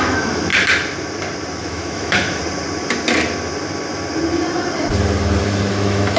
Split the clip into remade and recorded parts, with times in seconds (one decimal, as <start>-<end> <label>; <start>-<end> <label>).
0.0-0.5 remade; 0.5-1.6 recorded; 1.6-2.4 remade; 2.4-5.7 recorded; 5.7-6.2 remade